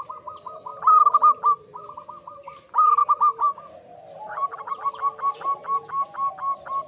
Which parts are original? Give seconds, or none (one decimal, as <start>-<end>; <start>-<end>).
0.0-6.9